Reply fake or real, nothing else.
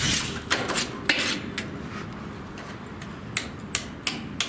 real